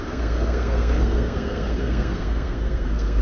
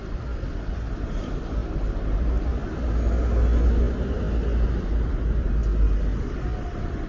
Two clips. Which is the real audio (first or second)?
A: second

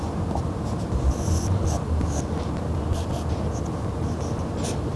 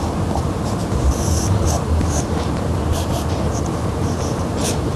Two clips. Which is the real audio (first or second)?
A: first